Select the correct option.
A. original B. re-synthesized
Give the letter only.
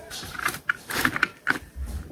B